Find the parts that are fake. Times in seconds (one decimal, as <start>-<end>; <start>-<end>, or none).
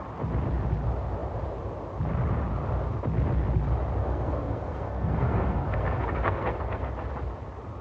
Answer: 4.0-6.9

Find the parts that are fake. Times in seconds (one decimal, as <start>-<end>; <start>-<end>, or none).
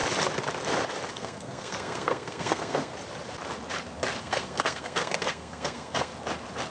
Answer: 1.1-2.9; 4.2-6.1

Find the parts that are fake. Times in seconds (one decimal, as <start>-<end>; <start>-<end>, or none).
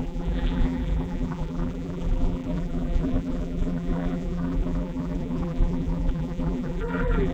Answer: 0.0-7.3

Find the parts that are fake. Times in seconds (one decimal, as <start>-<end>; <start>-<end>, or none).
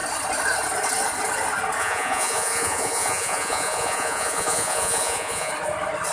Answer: 1.8-5.5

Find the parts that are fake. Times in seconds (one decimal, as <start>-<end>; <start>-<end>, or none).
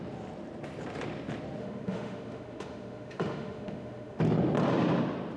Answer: 1.6-4.2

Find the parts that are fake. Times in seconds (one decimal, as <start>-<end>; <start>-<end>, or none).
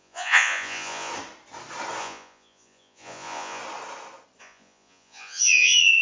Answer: 0.0-1.1; 2.0-3.6; 4.4-6.0